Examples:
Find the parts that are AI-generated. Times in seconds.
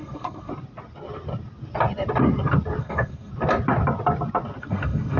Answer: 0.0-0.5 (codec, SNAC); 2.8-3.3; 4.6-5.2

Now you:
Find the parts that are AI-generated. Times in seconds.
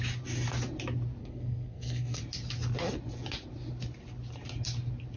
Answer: 1.2-2.2 (codec, SNAC)